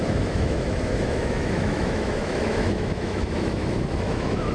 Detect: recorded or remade remade